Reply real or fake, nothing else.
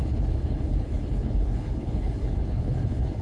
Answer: fake